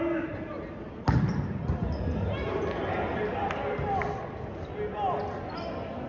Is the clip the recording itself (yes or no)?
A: yes